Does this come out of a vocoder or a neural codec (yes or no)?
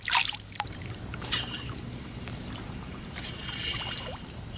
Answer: yes